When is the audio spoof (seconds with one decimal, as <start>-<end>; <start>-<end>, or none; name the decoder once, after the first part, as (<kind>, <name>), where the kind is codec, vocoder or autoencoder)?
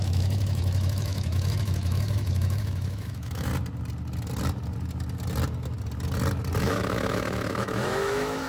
0.0-3.5 (autoencoder, DAC-VAE); 6.6-8.5